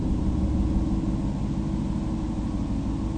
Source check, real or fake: real